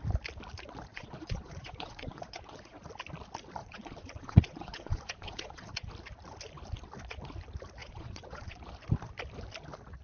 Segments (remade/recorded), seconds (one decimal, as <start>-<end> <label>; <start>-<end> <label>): 0.0-0.9 recorded; 0.9-2.8 remade; 2.8-3.6 recorded; 3.6-5.9 remade; 5.9-7.8 recorded; 7.8-8.6 remade; 8.6-10.0 recorded